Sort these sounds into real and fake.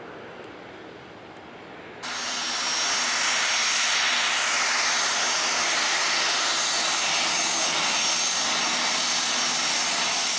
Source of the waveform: real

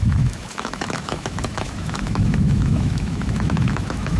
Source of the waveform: fake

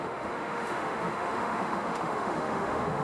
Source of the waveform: fake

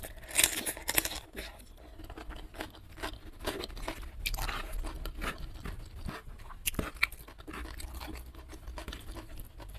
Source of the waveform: real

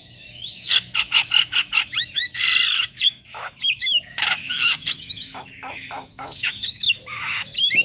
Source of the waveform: fake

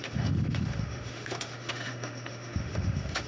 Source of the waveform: fake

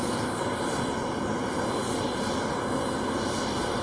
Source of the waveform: real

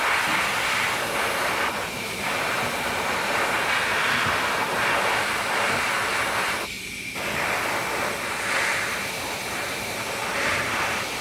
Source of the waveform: real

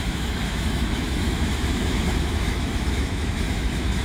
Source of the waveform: fake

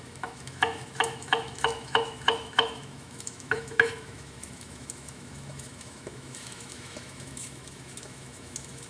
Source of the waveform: fake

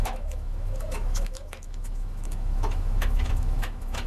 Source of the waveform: fake